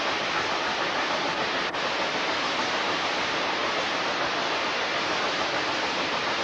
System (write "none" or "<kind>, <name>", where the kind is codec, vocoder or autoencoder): none